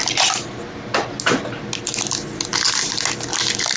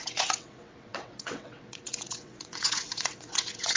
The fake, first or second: second